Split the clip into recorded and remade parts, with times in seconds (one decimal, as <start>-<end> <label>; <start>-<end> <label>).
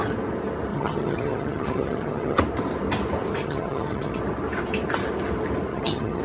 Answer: 0.0-0.7 recorded; 0.7-2.4 remade; 2.4-3.4 recorded; 3.4-4.2 remade; 4.2-5.7 recorded; 5.7-6.2 remade